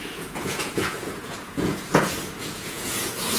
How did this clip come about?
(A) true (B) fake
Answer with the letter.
B